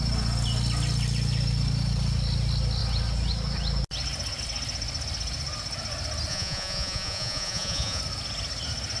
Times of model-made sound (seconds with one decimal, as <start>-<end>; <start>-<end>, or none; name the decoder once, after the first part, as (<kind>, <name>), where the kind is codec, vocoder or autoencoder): 6.3-8.0 (vocoder, Vocos)